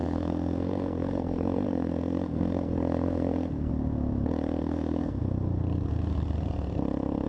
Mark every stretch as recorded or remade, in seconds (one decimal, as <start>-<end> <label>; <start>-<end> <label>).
0.0-3.7 remade; 3.7-4.6 recorded; 4.6-5.2 remade; 5.2-7.3 recorded